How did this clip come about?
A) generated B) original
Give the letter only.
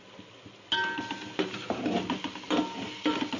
B